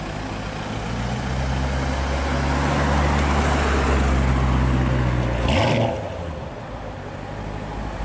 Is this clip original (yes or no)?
yes